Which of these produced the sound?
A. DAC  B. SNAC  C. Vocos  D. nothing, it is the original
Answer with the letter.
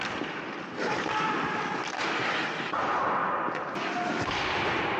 D